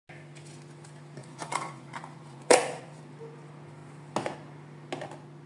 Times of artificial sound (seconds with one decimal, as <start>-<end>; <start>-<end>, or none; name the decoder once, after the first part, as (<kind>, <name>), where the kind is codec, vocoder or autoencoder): 1.2-3.0 (vocoder, Vocos)